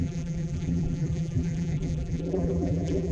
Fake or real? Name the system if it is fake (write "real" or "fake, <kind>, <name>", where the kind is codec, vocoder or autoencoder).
fake, vocoder, BigVGAN v2